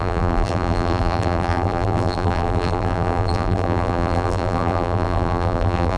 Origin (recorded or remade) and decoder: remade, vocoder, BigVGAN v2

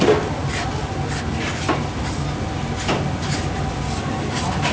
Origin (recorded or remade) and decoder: recorded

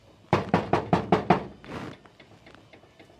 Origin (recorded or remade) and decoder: remade, vocoder, BigVGAN v2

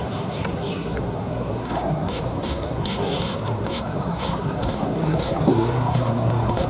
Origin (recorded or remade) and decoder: remade, codec, SNAC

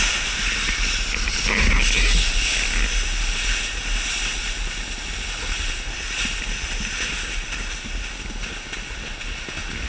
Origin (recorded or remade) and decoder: recorded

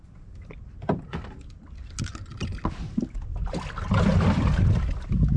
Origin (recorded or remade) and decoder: recorded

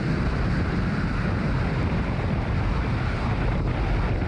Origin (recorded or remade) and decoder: remade, vocoder, BigVGAN v2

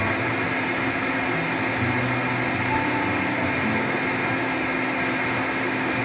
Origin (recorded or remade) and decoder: recorded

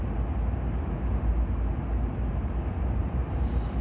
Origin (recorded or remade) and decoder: recorded